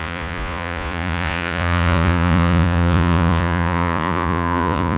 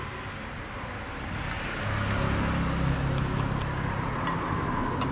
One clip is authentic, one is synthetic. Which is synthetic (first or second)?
first